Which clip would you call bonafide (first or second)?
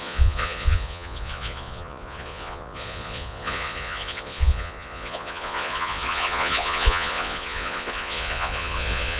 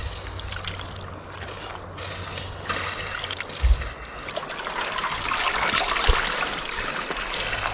second